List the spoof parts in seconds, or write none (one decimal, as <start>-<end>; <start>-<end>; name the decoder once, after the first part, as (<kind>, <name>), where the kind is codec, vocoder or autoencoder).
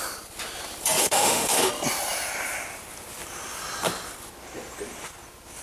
1.0-1.7 (autoencoder, DAC-VAE)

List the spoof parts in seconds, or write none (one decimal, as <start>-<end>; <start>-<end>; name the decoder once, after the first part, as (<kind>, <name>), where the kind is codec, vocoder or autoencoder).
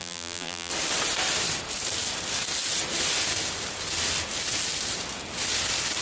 0.0-0.7 (vocoder, BigVGAN v2)